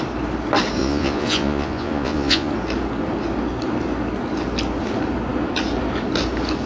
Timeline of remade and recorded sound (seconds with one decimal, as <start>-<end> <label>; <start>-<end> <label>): 0.0-0.8 recorded; 0.8-2.5 remade; 2.5-6.7 recorded